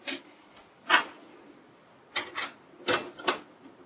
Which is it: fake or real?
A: real